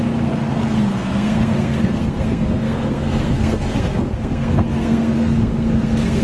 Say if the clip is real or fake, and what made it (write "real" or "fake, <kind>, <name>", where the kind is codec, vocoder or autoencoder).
fake, codec, SNAC